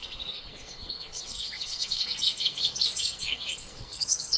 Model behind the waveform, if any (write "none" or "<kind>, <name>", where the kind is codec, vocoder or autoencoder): codec, SNAC